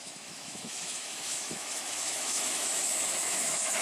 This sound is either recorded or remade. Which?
remade